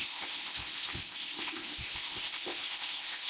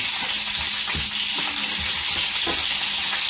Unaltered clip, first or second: second